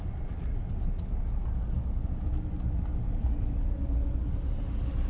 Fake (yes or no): no